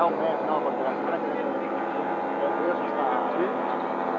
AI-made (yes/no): no